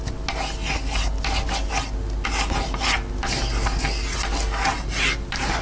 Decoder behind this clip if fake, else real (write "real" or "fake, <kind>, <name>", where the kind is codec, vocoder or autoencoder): real